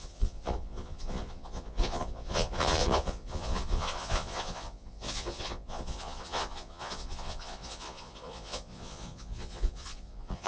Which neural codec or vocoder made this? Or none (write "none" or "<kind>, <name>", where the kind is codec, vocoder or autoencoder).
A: vocoder, Vocos